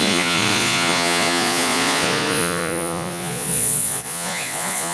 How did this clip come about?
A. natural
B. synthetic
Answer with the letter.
B